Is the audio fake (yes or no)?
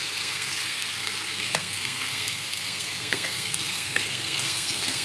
yes